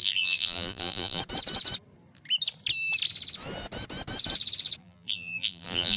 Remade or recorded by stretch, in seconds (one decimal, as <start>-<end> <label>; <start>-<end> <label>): 0.0-1.2 remade; 1.2-4.8 recorded; 4.8-6.0 remade